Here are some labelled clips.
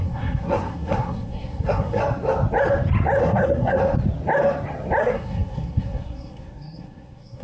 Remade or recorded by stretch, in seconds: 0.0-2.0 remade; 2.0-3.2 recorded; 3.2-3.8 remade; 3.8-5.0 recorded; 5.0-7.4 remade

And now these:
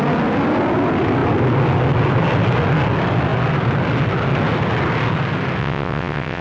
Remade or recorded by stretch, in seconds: 0.0-5.6 recorded; 5.6-6.4 remade

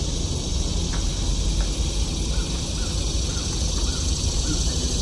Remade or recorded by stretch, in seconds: 0.0-3.9 recorded; 3.9-4.5 remade; 4.5-5.0 recorded

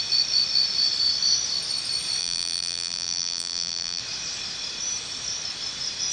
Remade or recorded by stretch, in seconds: 0.0-2.2 recorded; 2.2-4.0 remade; 4.0-6.1 recorded